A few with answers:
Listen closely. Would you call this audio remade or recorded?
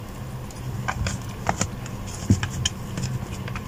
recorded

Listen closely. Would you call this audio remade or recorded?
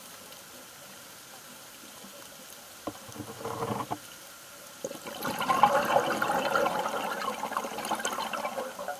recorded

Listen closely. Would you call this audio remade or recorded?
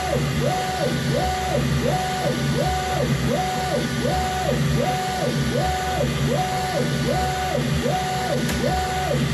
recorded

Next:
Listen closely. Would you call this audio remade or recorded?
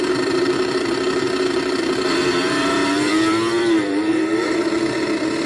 remade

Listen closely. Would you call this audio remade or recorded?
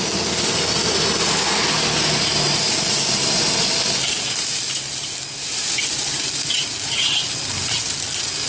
recorded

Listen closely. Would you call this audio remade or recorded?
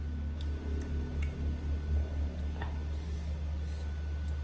recorded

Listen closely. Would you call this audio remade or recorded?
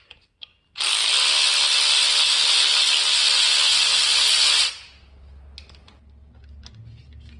recorded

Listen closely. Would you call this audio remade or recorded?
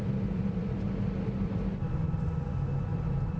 recorded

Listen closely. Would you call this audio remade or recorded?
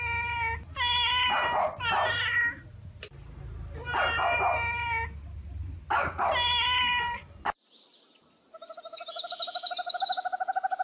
recorded